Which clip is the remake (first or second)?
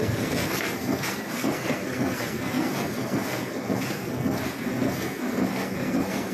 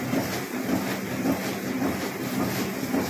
first